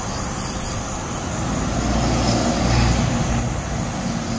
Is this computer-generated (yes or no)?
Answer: no